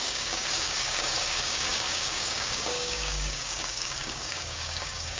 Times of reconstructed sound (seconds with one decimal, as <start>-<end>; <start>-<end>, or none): 0.0-5.2